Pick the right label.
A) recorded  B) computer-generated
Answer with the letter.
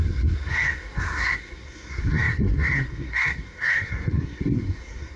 B